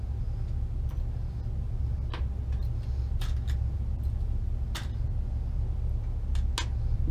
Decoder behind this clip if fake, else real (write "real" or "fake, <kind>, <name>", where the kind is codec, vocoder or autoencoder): real